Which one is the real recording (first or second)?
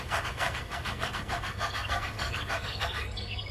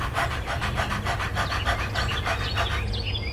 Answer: second